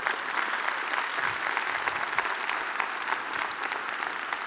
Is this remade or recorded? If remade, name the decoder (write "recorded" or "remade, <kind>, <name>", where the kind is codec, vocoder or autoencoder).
recorded